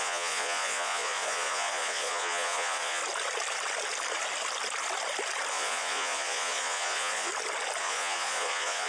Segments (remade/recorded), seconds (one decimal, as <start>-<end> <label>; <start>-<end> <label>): 0.0-3.0 remade; 3.0-5.5 recorded; 5.5-7.3 remade; 7.3-7.8 recorded; 7.8-8.9 remade